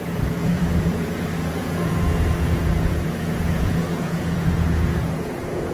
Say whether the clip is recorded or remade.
remade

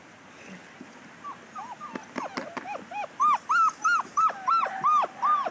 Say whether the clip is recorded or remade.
recorded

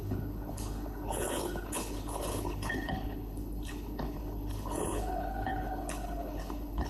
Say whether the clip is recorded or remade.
remade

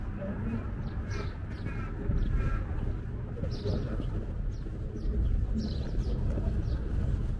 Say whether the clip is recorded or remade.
recorded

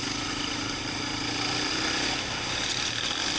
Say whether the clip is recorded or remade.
recorded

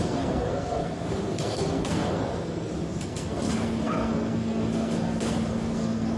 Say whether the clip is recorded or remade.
remade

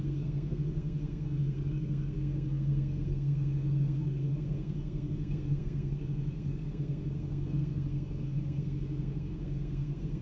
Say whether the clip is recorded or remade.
remade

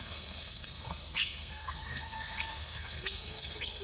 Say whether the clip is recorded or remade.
remade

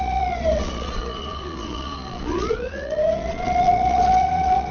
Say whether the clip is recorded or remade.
remade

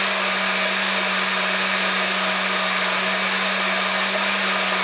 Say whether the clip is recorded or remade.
recorded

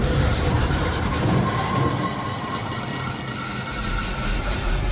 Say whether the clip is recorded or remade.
recorded